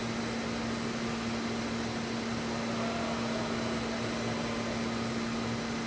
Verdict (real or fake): real